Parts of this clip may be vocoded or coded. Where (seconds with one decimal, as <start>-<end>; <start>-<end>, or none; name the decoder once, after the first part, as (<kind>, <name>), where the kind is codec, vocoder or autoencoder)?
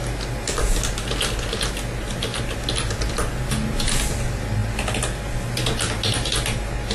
none